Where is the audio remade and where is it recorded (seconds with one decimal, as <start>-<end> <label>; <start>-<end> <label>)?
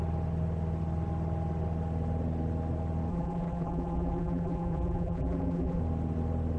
0.0-3.1 recorded; 3.1-5.8 remade; 5.8-6.6 recorded